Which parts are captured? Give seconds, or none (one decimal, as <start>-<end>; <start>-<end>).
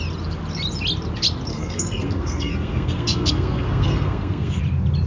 0.0-1.5; 4.6-5.1